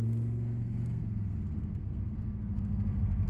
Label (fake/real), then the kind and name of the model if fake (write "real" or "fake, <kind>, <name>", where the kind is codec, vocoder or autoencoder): fake, codec, SNAC